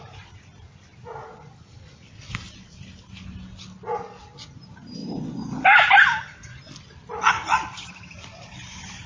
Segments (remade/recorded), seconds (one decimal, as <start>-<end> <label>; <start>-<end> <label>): 0.0-9.1 recorded